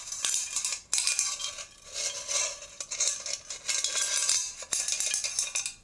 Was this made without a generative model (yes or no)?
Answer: yes